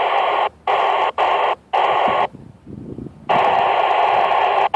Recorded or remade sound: recorded